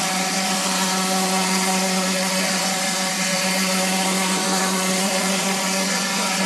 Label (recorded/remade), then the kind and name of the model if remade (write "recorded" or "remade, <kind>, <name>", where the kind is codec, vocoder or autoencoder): remade, vocoder, Vocos